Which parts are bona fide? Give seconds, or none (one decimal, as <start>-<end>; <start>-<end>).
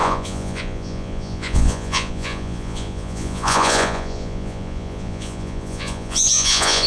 none